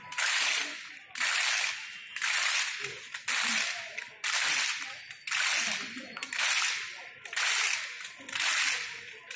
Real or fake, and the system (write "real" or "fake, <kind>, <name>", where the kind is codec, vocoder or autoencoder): real